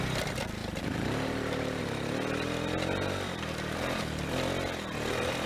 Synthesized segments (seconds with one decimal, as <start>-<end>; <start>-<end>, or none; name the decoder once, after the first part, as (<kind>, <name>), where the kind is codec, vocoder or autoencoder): 0.6-1.8 (vocoder, BigVGAN v2)